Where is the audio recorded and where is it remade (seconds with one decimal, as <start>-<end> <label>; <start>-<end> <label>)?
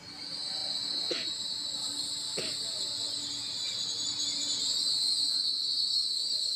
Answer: 0.0-6.6 recorded